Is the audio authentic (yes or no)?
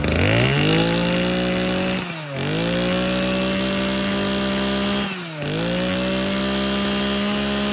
yes